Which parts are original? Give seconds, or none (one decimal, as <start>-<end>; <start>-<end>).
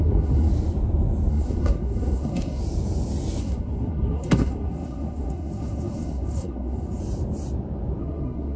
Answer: 0.5-1.3; 2.6-3.4; 7.0-8.0